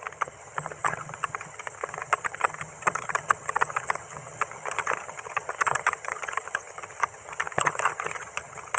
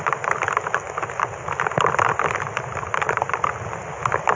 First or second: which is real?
second